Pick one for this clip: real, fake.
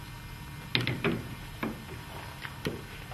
real